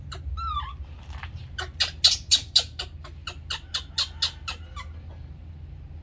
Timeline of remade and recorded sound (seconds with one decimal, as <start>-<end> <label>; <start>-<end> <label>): 0.0-6.0 recorded